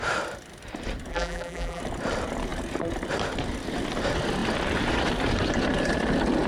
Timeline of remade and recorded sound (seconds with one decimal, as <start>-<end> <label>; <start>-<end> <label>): 0.0-1.1 recorded; 1.1-1.8 remade; 1.8-6.5 recorded